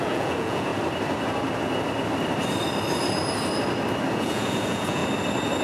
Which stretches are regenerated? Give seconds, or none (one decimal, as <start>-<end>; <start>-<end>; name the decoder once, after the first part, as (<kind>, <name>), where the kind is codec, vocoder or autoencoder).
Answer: 0.0-0.7 (vocoder, Vocos); 4.1-5.0